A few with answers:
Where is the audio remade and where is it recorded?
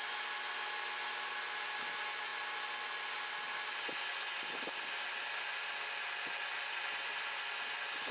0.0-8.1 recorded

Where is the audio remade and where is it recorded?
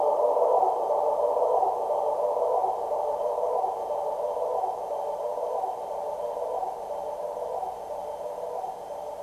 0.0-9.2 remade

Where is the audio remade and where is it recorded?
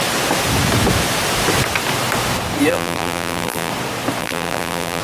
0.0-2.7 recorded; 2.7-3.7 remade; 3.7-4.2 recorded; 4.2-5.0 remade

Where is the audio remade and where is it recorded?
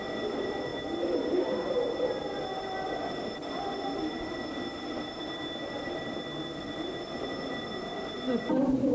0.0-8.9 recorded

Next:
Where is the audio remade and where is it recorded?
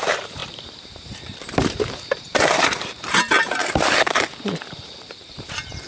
0.0-5.9 remade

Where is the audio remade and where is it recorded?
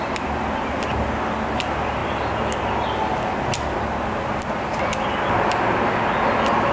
0.0-6.7 recorded